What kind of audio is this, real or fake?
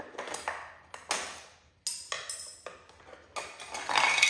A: real